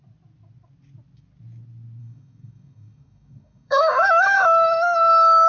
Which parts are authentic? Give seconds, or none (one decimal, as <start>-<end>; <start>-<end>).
0.0-2.0